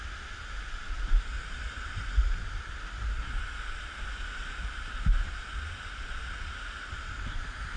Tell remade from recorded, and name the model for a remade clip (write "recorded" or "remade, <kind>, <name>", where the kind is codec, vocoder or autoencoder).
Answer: recorded